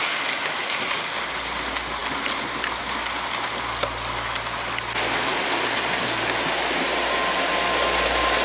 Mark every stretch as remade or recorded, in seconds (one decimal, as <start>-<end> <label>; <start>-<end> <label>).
0.0-8.4 recorded